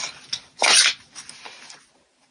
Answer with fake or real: real